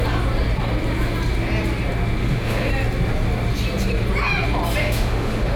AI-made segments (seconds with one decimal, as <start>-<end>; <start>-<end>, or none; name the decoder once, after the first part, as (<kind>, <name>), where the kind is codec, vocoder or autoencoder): 2.2-2.7 (autoencoder, DAC-VAE); 4.8-5.6